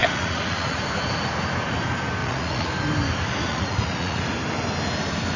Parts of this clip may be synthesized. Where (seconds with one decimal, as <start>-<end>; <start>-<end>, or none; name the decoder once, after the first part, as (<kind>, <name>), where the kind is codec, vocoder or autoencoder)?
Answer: 0.0-0.8 (vocoder, Vocos); 2.2-2.7; 3.5-4.2